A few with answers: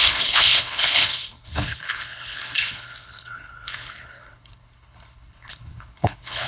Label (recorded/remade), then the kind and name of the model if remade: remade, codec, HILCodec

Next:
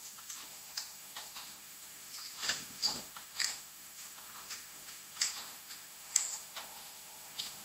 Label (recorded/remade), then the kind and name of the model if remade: remade, autoencoder, DAC-VAE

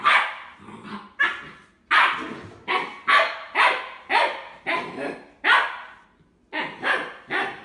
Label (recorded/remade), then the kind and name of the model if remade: recorded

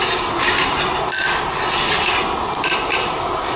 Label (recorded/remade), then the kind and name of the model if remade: recorded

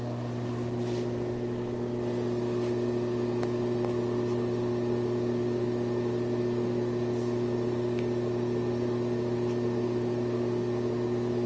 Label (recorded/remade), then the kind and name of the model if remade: recorded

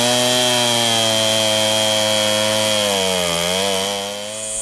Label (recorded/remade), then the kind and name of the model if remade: recorded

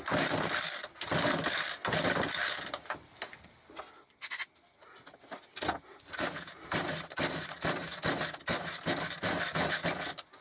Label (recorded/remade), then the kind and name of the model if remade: recorded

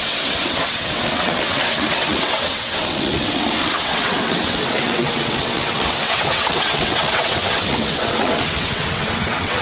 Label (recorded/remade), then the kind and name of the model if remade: remade, vocoder, WaveNeXt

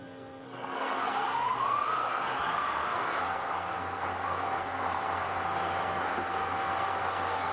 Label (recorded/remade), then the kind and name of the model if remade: remade, codec, SNAC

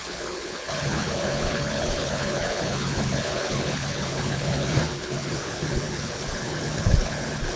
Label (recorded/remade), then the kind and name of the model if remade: remade, codec, HILCodec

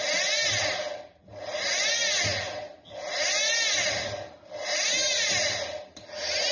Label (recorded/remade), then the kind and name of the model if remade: recorded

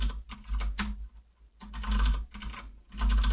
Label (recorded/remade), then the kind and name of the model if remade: recorded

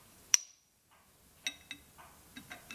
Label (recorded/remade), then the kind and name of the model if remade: recorded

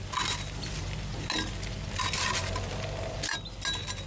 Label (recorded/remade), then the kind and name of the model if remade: recorded